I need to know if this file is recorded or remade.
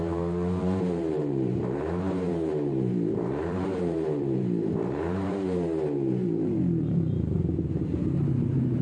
remade